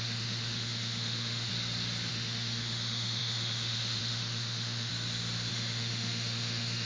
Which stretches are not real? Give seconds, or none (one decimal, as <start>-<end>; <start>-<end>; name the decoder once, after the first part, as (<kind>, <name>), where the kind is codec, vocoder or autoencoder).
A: 0.0-1.5 (autoencoder, DAC-VAE); 2.1-4.9; 5.5-6.9